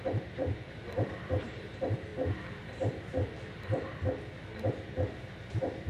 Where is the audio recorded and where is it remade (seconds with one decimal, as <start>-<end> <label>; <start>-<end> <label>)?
0.0-2.1 remade; 2.1-5.5 recorded; 5.5-5.9 remade